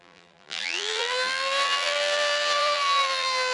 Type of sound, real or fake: fake